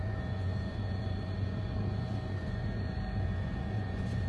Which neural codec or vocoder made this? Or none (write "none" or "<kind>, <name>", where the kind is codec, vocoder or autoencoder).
vocoder, Vocos